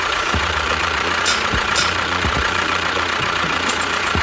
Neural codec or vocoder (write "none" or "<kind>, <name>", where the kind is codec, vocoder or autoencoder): vocoder, Vocos